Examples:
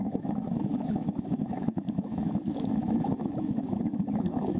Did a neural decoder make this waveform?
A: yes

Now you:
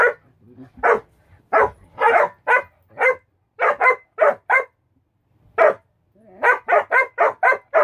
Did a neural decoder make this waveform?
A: no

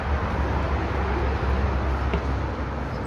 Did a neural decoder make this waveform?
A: no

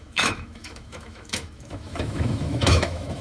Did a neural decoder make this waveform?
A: yes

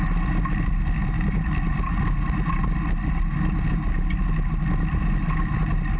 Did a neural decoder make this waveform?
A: no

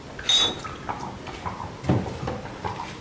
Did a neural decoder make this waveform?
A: no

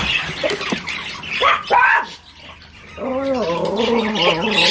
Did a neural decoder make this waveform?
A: no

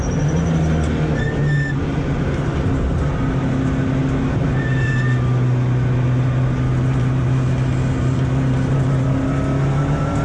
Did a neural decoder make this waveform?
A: no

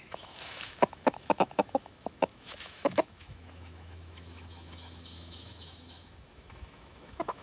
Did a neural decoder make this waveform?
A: yes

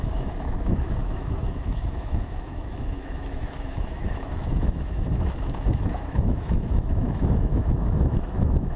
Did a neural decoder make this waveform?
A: yes